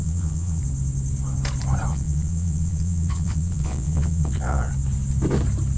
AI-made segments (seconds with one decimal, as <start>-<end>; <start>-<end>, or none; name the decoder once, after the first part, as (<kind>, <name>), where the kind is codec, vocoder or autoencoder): 0.0-0.6 (vocoder, Vocos); 1.9-4.7